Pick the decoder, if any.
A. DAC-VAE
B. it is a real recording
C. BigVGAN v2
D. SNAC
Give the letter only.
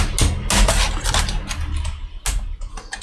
B